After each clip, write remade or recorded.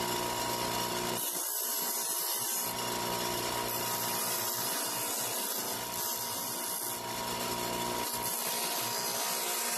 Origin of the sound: recorded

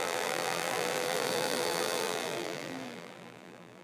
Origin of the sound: remade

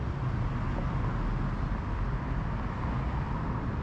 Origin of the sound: recorded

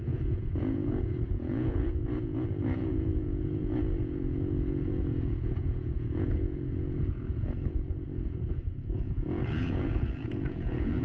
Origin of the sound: remade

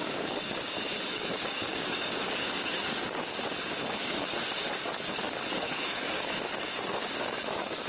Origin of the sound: remade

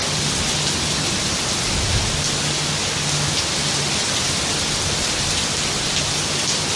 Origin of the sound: recorded